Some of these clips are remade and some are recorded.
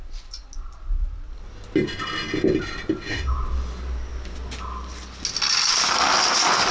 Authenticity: recorded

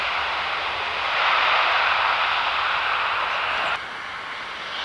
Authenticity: recorded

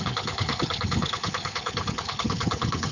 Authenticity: remade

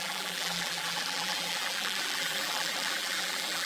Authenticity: remade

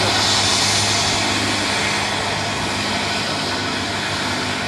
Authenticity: recorded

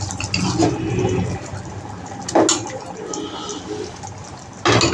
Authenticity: recorded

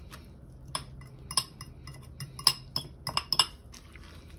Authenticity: recorded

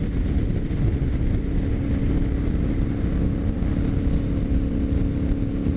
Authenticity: recorded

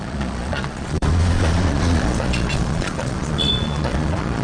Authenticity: remade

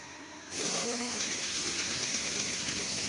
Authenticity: remade